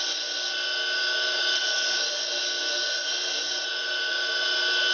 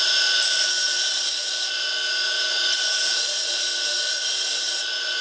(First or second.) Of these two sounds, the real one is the first